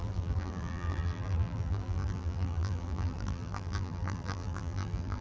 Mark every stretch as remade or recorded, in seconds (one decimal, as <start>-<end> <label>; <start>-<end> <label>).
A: 0.0-5.2 remade